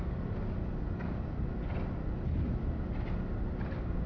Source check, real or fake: real